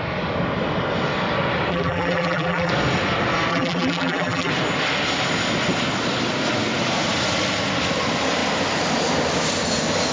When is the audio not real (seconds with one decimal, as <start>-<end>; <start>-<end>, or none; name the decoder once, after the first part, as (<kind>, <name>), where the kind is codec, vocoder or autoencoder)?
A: 1.7-2.7 (vocoder, BigVGAN v2); 3.5-4.5